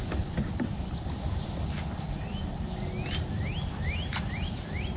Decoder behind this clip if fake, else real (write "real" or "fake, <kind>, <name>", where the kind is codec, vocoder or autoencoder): real